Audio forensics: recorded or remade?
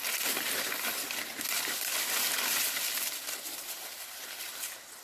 recorded